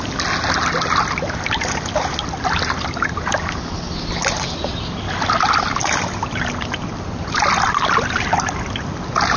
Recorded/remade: recorded